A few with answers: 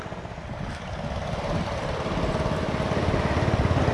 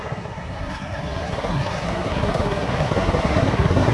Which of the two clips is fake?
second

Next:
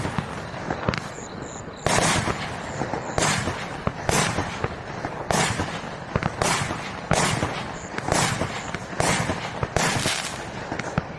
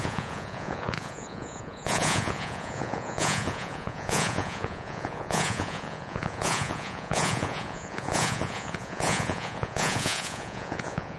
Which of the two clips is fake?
second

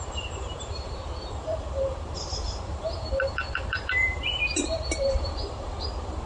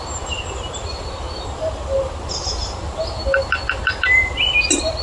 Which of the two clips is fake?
first